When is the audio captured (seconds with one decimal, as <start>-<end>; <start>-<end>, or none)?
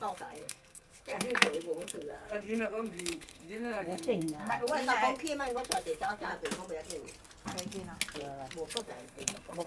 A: 4.7-5.4; 6.3-8.8